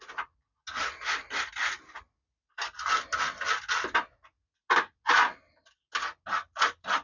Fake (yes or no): no